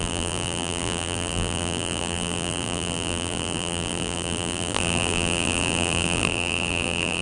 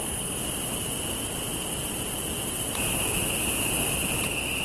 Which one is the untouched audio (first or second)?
second